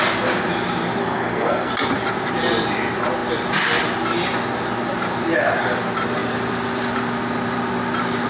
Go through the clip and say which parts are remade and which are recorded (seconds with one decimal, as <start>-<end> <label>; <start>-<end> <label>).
0.0-1.0 recorded; 1.0-1.7 remade; 1.7-8.3 recorded

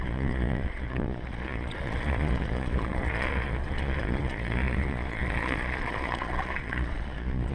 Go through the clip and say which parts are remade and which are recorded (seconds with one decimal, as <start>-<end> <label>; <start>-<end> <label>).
0.0-7.5 remade